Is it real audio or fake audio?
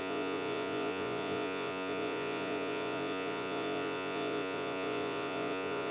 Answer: fake